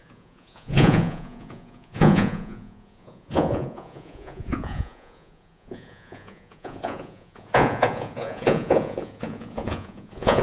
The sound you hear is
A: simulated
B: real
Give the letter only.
A